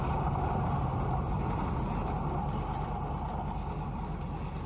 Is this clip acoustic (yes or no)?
yes